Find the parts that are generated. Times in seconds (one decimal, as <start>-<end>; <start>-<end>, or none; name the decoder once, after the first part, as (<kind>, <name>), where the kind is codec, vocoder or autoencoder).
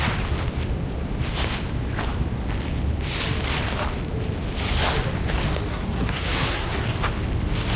5.7-6.8 (codec, SNAC)